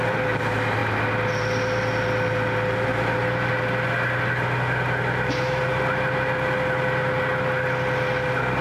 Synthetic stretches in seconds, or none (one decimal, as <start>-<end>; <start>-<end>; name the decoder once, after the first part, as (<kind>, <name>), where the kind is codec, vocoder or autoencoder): none

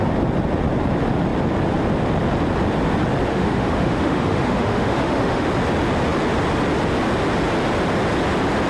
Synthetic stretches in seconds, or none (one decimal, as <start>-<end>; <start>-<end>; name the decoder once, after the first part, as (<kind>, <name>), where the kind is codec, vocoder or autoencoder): 3.3-5.5 (autoencoder, DAC-VAE)

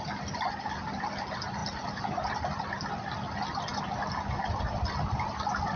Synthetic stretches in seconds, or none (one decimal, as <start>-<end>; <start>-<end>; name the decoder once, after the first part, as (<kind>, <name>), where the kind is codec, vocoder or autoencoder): none